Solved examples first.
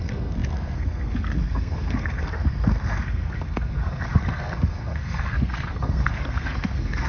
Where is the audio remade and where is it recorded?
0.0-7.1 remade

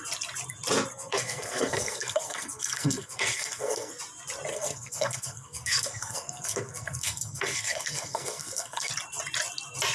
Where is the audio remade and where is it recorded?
0.0-0.9 recorded; 0.9-4.0 remade; 4.0-4.5 recorded; 4.5-8.9 remade; 8.9-9.9 recorded

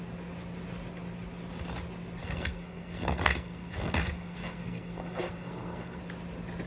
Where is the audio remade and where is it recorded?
0.0-2.2 recorded; 2.2-6.0 remade; 6.0-6.7 recorded